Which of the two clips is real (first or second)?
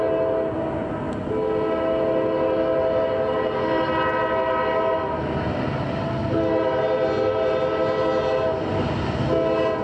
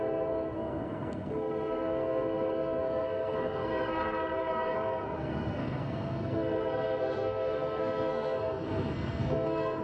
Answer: first